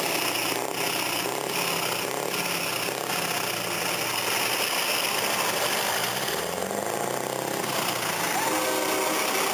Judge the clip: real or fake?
real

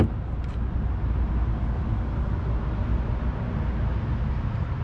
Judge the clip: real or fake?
real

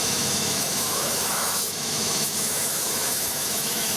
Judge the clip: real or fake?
fake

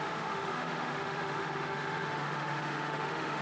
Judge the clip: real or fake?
fake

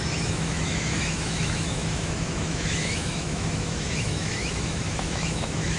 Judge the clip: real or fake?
fake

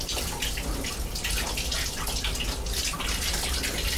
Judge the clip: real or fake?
real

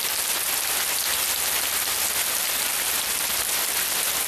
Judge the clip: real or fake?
real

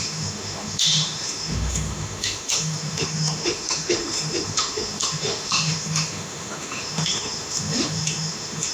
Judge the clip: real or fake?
fake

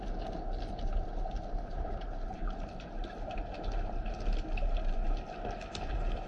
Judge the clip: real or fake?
real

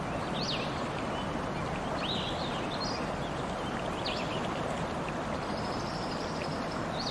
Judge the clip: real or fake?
real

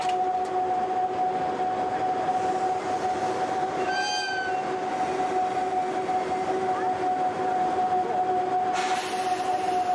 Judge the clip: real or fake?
real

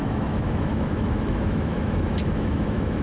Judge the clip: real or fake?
fake